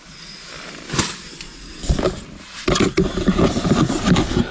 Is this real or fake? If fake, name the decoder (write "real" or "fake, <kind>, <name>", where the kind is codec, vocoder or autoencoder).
real